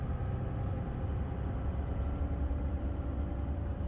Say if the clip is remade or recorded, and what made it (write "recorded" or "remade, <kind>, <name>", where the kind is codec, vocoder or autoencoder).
recorded